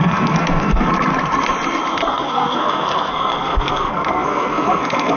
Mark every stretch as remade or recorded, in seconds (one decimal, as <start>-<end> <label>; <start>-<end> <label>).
0.0-0.9 remade; 0.9-2.1 recorded; 2.1-5.2 remade